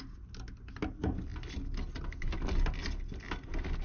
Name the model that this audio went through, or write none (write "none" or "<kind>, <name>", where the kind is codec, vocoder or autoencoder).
none